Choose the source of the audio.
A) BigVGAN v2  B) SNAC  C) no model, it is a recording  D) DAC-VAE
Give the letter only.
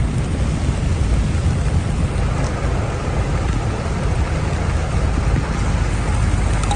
C